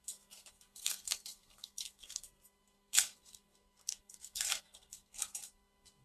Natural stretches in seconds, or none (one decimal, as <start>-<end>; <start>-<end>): none